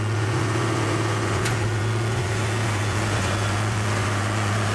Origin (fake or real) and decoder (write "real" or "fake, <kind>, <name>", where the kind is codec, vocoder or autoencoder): fake, vocoder, Vocos